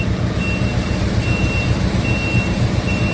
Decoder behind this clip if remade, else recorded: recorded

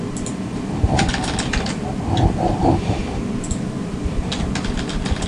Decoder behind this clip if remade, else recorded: recorded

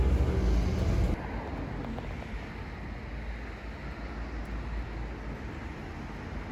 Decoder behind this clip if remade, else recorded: recorded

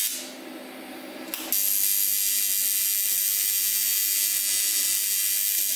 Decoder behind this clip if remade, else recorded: recorded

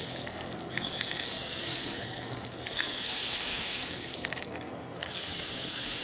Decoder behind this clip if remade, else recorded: remade, codec, SNAC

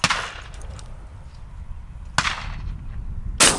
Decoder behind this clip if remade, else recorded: recorded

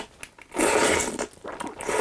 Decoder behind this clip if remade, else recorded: recorded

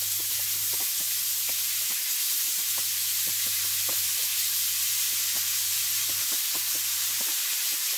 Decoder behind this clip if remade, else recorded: recorded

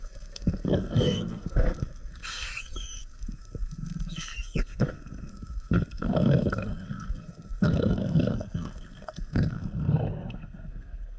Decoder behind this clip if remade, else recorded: remade, codec, SNAC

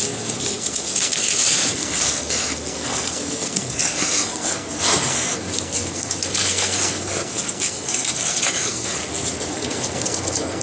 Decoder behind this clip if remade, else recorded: remade, codec, SNAC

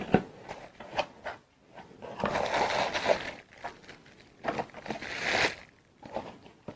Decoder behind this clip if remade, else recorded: recorded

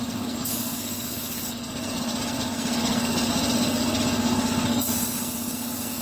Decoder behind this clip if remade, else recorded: remade, codec, SNAC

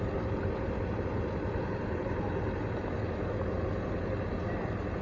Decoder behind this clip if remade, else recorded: recorded